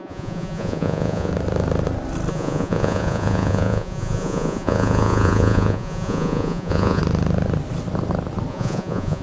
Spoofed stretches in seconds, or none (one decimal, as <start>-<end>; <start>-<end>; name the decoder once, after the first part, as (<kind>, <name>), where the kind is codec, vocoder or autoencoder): 0.0-1.3 (vocoder, Vocos); 2.3-7.0; 8.5-9.2